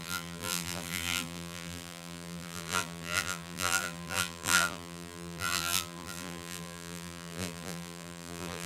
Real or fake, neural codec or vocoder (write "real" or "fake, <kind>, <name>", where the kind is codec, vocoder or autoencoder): fake, vocoder, BigVGAN v2